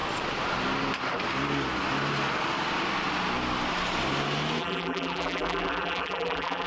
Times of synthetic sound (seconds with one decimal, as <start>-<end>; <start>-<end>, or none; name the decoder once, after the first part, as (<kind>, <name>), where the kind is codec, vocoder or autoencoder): 4.6-6.7 (vocoder, BigVGAN v2)